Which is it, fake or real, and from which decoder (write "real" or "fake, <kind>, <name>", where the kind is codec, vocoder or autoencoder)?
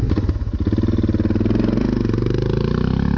real